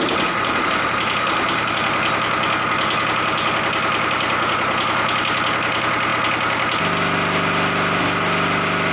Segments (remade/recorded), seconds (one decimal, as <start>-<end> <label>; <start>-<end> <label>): 0.0-8.9 recorded